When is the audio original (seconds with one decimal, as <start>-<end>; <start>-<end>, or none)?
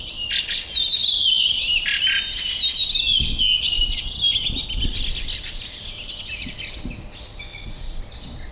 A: 0.0-7.5; 8.0-8.5